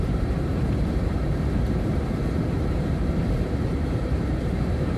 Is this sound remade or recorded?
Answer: remade